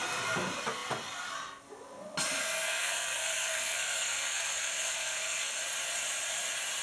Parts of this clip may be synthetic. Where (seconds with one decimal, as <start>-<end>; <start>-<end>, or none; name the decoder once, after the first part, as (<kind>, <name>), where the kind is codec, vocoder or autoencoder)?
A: 2.4-5.6 (codec, SNAC)